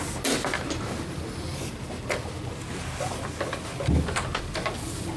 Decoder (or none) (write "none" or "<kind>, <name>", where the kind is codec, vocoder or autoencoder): none